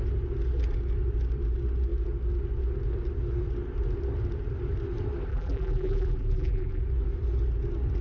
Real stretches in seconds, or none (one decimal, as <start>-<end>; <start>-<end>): 0.0-5.3; 6.8-8.0